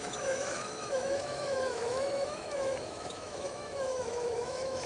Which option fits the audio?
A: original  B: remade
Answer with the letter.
B